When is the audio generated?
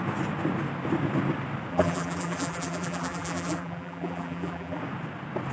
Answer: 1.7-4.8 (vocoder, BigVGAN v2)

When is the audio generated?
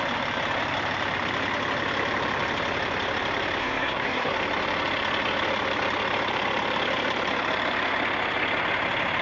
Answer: 3.6-4.3 (codec, SNAC)